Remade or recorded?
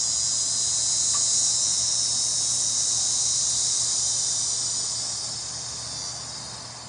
recorded